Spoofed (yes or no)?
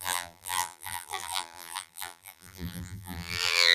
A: yes